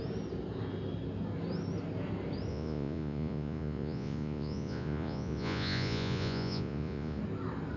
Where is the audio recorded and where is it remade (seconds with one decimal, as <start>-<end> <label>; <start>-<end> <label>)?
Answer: 0.0-2.5 recorded; 2.5-7.2 remade; 7.2-7.8 recorded